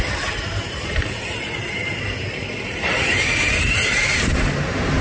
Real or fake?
fake